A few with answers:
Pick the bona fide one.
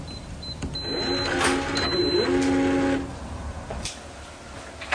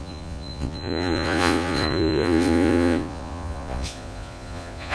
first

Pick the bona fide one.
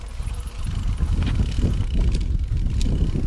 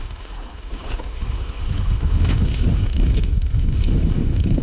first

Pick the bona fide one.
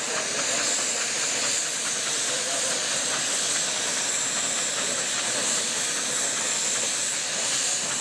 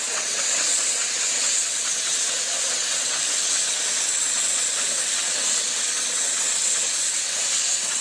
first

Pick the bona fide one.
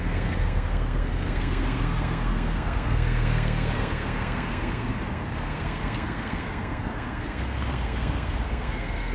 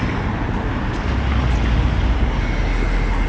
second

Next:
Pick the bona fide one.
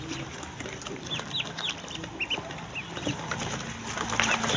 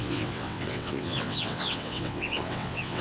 first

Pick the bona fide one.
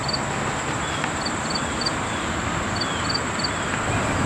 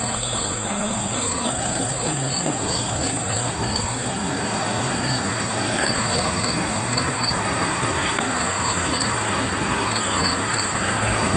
first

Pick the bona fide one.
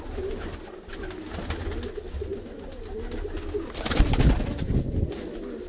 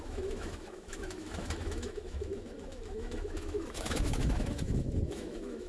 first